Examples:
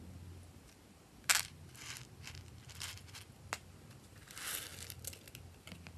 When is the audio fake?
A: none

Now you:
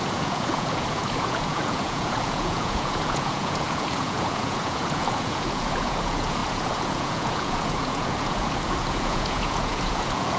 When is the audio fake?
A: 0.0-10.4 (vocoder, Vocos)